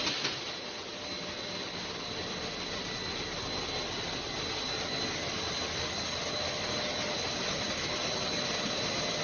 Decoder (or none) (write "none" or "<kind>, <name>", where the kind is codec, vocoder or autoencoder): none